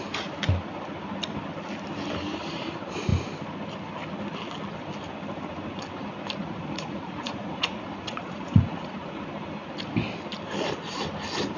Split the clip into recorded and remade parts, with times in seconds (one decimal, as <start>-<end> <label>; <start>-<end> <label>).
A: 0.0-6.4 recorded; 6.4-9.2 remade; 9.2-11.6 recorded